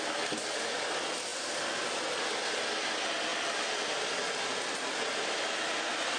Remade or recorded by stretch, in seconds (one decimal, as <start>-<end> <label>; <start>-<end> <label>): 0.0-6.2 recorded